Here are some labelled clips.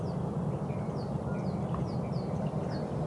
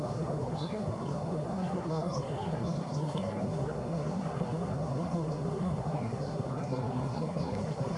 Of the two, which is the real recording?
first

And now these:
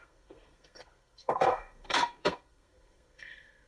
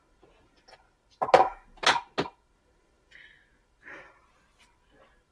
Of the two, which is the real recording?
second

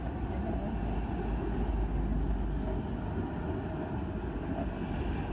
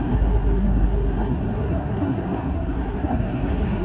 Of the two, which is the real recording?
first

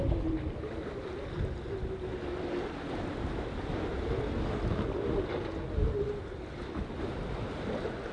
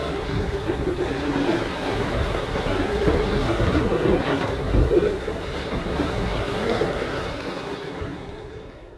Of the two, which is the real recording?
first